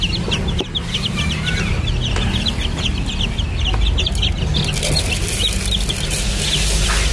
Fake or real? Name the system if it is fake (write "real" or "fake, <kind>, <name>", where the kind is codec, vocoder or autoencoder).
real